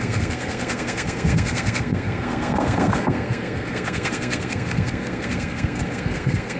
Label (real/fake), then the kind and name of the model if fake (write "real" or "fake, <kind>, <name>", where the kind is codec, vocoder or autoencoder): fake, codec, SNAC